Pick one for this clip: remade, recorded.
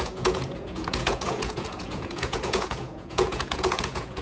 remade